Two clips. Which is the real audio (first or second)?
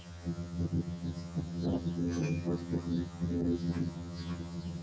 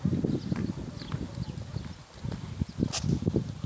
second